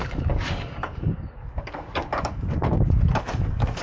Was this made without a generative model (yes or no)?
no